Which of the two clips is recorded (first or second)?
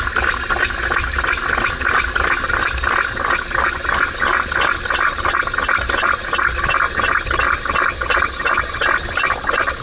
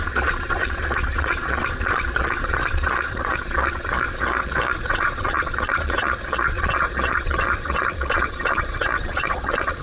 first